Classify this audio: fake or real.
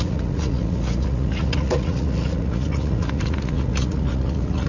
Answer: fake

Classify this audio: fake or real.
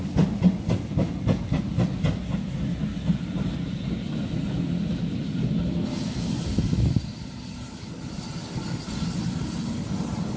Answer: real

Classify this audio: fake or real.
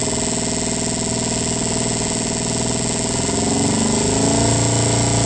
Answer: real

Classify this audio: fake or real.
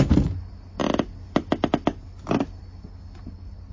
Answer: real